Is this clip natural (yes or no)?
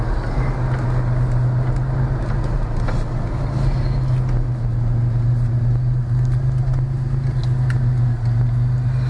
yes